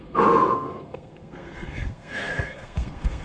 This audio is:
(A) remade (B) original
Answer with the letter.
A